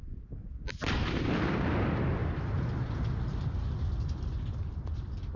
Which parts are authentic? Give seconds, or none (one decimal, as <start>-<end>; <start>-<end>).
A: 0.0-2.2

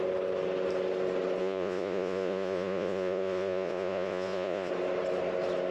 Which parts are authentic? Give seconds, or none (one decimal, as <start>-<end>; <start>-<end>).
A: 0.0-1.4; 4.7-5.7

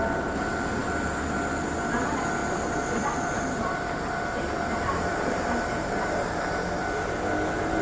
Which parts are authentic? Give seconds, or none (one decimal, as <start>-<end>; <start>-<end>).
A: 0.0-2.4; 6.4-7.8

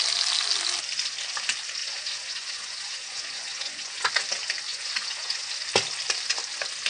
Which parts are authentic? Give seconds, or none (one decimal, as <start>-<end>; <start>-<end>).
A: 0.0-1.8; 4.1-4.7; 5.5-6.9

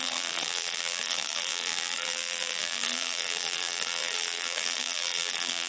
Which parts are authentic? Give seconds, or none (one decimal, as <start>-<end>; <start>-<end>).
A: none

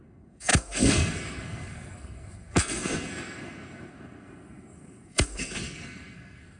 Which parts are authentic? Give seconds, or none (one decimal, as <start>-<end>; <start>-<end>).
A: none